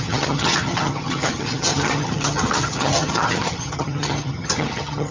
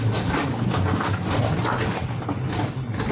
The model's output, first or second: first